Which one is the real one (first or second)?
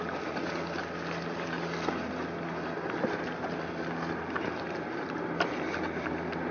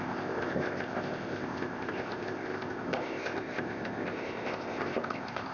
first